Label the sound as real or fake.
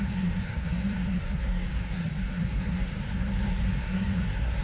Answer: fake